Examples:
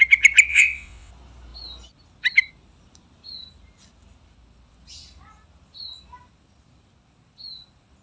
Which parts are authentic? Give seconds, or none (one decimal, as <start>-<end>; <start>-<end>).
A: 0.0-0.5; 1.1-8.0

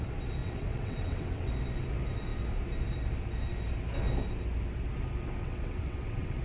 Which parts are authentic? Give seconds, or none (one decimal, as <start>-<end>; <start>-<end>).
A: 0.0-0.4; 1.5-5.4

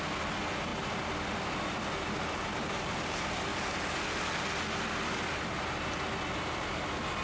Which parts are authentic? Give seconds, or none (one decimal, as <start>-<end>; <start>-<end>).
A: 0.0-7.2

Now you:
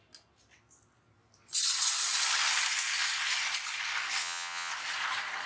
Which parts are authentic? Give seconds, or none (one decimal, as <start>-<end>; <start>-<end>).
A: 0.0-4.2; 4.7-5.5

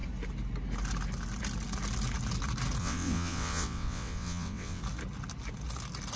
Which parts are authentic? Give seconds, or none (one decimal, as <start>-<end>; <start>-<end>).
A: 0.0-2.8; 4.8-6.2

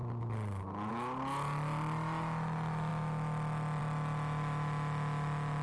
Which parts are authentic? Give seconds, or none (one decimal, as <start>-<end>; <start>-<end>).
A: 0.0-5.6

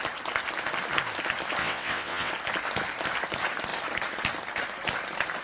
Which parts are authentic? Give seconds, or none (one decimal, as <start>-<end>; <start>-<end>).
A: 0.0-1.6; 2.3-5.4